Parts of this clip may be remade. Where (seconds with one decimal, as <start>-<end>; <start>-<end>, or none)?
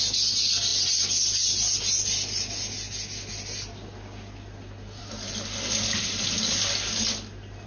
none